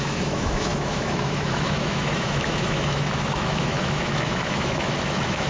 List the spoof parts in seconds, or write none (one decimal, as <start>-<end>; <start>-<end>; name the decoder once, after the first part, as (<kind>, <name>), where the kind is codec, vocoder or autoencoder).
0.0-5.5 (autoencoder, DAC-VAE)